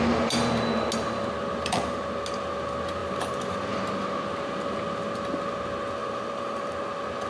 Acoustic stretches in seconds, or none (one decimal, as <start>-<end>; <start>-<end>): 0.0-3.0; 3.8-6.0; 6.7-7.3